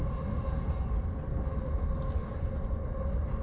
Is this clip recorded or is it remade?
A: recorded